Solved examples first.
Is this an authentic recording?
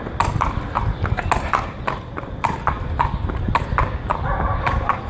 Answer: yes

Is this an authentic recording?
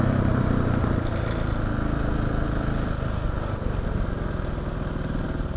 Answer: yes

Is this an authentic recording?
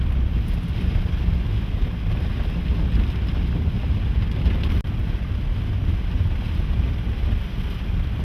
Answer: yes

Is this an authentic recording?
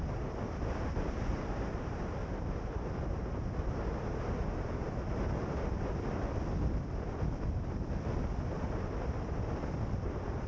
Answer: yes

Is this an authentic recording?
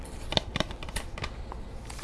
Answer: no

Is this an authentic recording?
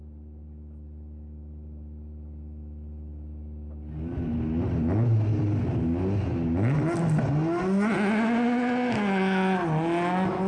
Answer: yes